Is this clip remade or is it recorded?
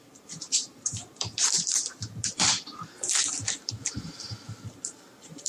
remade